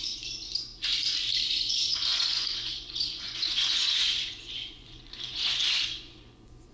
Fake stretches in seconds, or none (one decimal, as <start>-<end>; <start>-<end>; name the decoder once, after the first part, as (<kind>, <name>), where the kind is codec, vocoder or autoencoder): 0.0-0.7 (vocoder, Vocos); 1.5-6.7

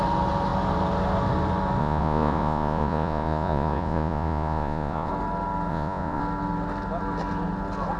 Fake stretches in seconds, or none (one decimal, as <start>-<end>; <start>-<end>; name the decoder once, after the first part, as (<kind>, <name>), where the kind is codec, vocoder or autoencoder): 1.8-5.1 (vocoder, Vocos); 5.7-6.2

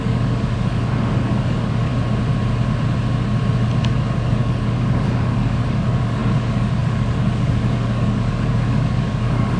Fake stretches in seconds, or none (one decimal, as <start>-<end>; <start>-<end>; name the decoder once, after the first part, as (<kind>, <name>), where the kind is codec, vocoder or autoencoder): 0.0-1.9 (codec, DAC); 3.8-9.6

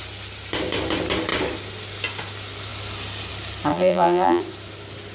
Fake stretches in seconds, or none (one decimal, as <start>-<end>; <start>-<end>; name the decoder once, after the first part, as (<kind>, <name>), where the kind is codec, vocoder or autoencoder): 3.7-4.4 (vocoder, BigVGAN v2)

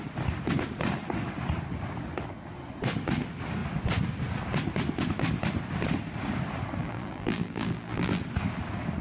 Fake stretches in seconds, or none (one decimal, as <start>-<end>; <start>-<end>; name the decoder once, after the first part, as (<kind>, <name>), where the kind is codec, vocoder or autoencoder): 6.8-8.2 (vocoder, BigVGAN v2)

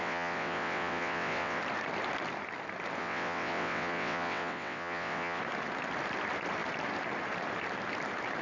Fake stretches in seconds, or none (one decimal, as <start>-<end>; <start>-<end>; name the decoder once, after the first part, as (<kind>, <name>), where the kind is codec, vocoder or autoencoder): 0.0-1.6 (vocoder, WaveNeXt); 3.0-5.4

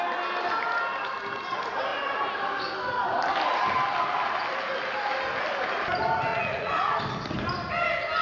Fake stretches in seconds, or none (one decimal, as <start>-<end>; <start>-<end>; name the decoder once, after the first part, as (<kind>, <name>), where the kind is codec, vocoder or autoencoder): 6.3-7.0 (vocoder, Vocos)

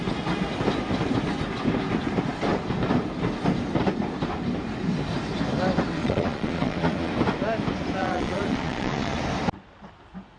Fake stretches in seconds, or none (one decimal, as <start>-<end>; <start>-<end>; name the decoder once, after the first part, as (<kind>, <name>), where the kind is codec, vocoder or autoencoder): 6.0-7.1 (vocoder, Vocos); 8.0-9.2